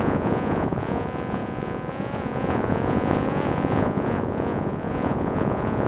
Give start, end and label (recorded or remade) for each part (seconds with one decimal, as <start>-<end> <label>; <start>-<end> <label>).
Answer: 0.0-5.9 remade